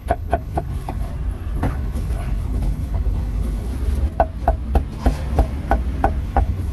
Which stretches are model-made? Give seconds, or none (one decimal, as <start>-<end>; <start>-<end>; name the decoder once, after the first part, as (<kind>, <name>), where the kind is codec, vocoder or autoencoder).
0.0-1.1 (codec, HILCodec); 1.7-3.7; 6.2-6.7